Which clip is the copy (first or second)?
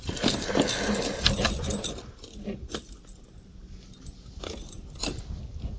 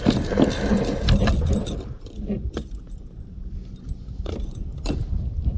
second